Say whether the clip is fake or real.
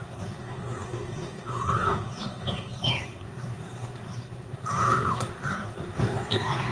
fake